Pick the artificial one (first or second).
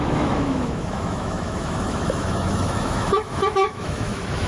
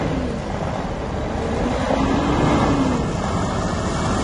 first